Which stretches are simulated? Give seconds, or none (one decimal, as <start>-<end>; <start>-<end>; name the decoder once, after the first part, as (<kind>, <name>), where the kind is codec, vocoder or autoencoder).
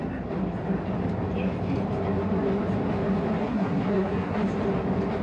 3.4-4.4 (codec, SNAC)